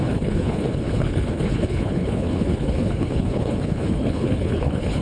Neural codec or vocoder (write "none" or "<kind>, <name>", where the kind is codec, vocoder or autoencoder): codec, HILCodec